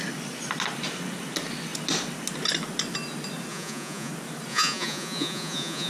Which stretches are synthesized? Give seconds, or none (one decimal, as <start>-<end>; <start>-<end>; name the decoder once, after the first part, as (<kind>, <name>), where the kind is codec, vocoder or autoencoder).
3.5-4.1 (vocoder, Vocos); 4.5-5.9

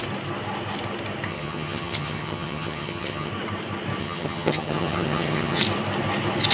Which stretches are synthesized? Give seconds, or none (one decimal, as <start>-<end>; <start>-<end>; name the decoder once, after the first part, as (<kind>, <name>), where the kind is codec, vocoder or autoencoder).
1.3-3.3 (vocoder, HiFi-GAN); 4.0-5.6

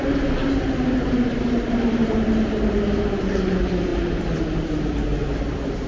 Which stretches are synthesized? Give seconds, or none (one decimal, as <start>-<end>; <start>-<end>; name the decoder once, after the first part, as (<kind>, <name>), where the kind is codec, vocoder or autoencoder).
none